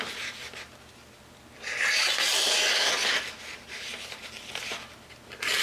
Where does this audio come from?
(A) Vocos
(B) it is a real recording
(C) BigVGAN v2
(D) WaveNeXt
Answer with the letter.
B